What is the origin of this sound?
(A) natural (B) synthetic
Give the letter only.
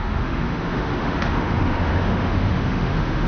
B